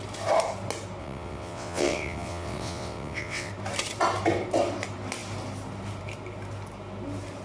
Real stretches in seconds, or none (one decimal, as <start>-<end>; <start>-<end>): 0.0-1.0; 3.5-7.4